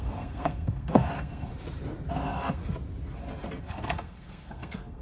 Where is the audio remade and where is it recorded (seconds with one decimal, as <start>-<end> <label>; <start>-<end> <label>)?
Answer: 0.0-1.5 remade; 1.5-2.1 recorded; 2.1-2.6 remade; 2.6-3.6 recorded; 3.6-5.0 remade